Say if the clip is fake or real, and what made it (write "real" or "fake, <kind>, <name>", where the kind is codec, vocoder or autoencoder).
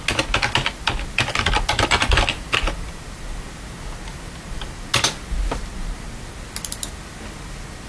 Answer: real